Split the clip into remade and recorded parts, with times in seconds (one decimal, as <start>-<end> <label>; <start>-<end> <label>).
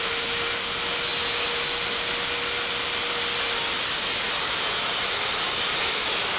0.0-6.4 recorded